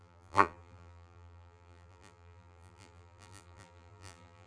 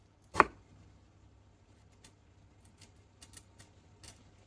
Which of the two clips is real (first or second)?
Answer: second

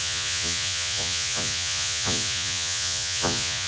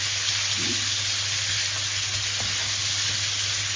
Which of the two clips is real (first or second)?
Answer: second